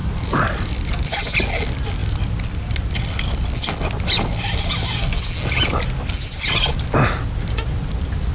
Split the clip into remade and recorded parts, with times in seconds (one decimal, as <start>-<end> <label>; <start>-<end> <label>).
0.0-0.7 remade; 0.7-8.3 recorded